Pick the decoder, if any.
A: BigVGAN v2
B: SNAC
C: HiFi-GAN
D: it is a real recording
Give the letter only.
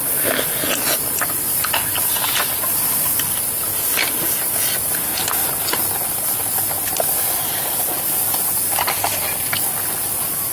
D